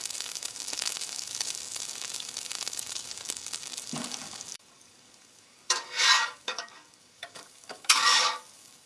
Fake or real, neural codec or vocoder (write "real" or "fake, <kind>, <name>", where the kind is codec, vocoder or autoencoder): fake, codec, DAC